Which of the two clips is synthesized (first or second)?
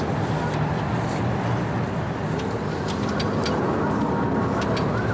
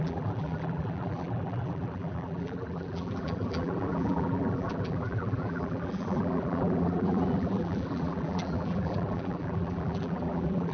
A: second